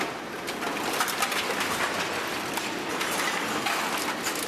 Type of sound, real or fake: real